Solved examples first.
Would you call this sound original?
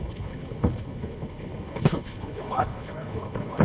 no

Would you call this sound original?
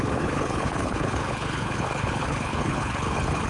no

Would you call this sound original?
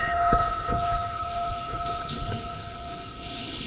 no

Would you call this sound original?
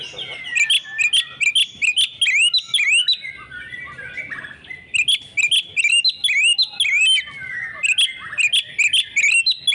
yes